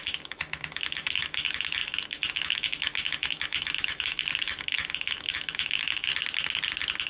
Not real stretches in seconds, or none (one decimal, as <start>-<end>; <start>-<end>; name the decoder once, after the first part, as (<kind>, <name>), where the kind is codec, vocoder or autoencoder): 0.0-6.1 (autoencoder, DAC-VAE)